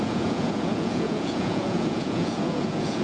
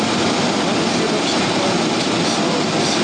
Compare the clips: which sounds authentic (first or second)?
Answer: second